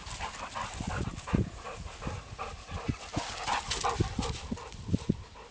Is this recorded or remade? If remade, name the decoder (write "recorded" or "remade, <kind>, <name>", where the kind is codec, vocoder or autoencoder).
recorded